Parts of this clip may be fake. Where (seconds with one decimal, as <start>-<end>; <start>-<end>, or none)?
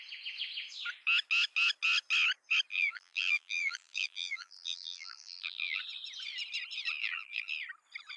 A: 2.7-5.8; 7.0-7.5